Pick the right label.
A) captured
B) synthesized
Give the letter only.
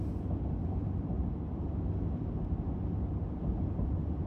A